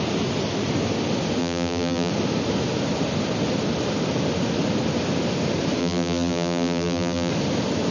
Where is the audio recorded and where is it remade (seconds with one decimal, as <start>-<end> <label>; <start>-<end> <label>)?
0.0-1.4 recorded; 1.4-2.1 remade; 2.1-5.8 recorded; 5.8-7.3 remade; 7.3-7.9 recorded